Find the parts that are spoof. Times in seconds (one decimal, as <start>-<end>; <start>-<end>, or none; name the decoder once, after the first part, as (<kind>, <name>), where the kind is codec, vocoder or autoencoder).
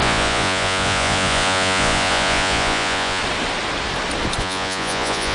0.0-3.2 (vocoder, Vocos); 4.4-5.3